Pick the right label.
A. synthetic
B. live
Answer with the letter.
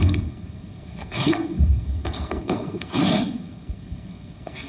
A